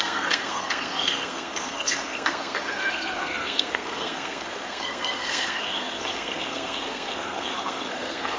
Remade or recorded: remade